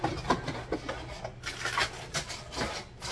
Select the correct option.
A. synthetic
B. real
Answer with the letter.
B